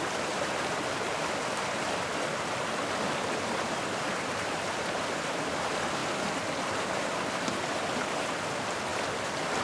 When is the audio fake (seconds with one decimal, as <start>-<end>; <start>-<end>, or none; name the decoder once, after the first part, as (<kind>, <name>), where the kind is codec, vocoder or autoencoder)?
0.0-6.0 (vocoder, BigVGAN v2); 7.9-8.9